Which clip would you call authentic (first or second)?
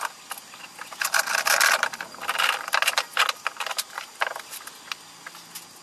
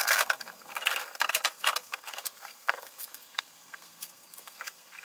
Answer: first